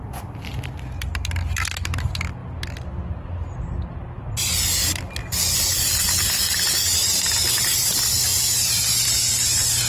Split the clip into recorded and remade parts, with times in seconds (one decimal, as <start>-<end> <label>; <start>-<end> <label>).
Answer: 0.0-9.9 recorded